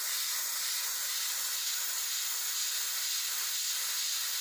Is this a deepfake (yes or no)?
no